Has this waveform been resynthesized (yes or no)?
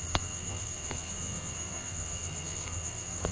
yes